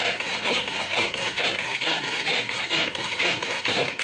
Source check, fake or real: fake